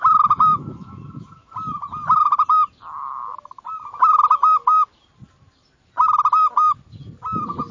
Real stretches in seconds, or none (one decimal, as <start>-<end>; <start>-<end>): 0.0-0.5; 1.5-7.7